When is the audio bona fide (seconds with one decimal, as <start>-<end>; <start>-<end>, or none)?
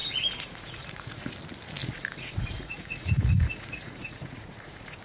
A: 1.3-1.8